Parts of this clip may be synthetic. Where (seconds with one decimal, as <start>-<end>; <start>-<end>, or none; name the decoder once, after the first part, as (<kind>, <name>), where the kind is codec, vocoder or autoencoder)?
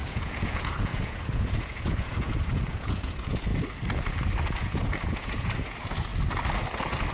0.0-3.5 (vocoder, Vocos); 4.4-6.1